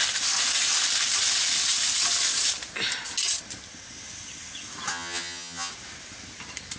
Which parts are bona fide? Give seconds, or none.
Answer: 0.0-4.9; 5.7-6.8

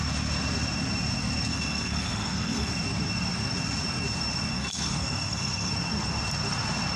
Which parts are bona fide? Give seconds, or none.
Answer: 0.0-1.5; 2.7-4.5; 5.7-7.0